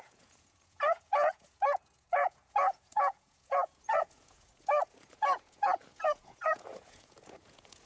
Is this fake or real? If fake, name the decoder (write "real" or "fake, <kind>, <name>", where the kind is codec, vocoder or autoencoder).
fake, vocoder, Vocos